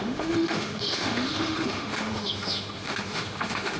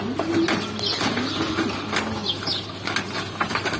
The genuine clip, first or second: second